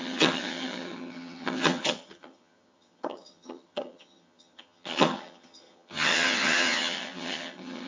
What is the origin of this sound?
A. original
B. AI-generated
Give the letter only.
B